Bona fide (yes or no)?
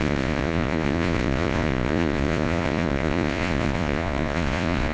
no